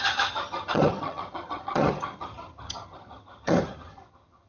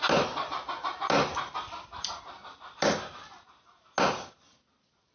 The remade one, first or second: first